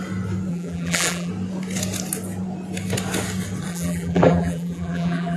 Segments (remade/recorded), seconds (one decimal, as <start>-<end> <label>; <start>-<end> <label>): 0.0-0.5 recorded; 0.5-1.3 remade; 1.3-3.7 recorded; 3.7-5.4 remade